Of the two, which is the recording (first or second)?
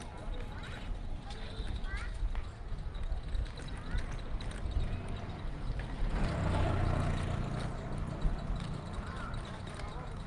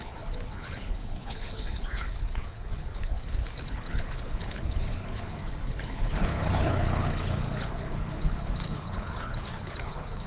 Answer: first